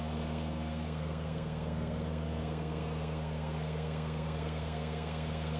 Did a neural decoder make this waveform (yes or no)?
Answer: yes